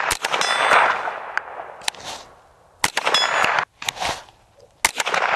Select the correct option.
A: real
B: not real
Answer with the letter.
A